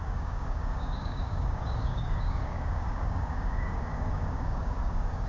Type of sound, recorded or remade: remade